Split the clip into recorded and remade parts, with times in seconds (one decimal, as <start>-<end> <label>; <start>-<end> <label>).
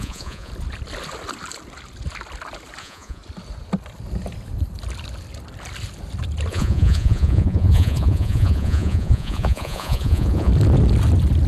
0.0-0.5 remade; 0.5-2.8 recorded; 2.8-3.2 remade; 3.2-6.5 recorded; 6.5-10.5 remade; 10.5-11.5 recorded